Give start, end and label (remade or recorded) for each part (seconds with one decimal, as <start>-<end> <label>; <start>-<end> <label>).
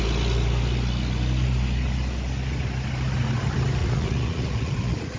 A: 0.0-3.8 recorded; 3.8-5.2 remade